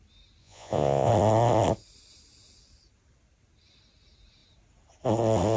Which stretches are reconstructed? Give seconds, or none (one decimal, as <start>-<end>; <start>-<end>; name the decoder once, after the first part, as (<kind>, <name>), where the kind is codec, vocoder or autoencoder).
0.4-1.1 (vocoder, Vocos)